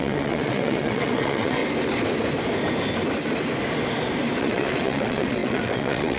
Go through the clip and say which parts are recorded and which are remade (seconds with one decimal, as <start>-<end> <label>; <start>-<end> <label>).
0.0-1.6 remade; 1.6-4.4 recorded; 4.4-6.2 remade